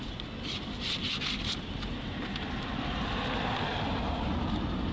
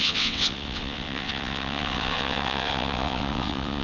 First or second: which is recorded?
first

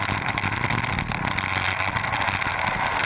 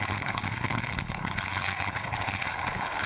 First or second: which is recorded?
first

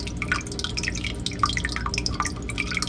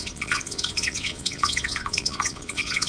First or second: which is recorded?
first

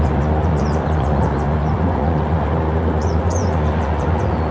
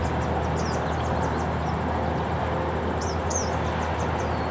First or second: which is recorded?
second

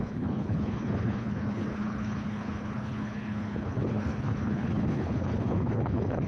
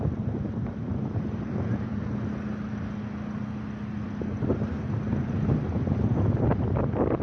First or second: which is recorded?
second